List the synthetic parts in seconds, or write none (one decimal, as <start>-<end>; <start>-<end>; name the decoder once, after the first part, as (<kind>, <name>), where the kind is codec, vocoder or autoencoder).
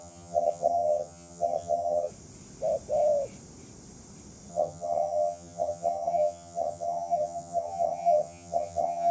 0.0-2.1 (vocoder, HiFi-GAN); 4.5-9.1